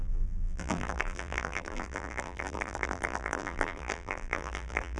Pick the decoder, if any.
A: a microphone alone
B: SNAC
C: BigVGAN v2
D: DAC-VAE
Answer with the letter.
C